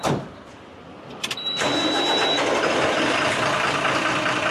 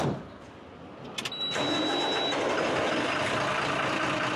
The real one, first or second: second